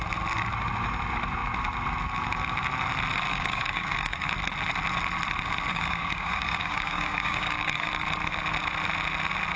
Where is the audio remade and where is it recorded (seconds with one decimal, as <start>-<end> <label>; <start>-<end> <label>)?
0.0-3.3 recorded; 3.3-4.3 remade; 4.3-5.7 recorded; 5.7-7.9 remade; 7.9-9.6 recorded